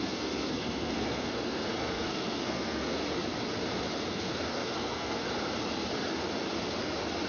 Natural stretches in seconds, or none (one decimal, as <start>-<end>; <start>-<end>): 3.0-4.1; 5.2-7.3